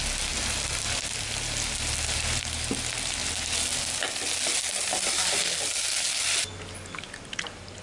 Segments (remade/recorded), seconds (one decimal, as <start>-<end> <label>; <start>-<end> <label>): 0.0-7.8 recorded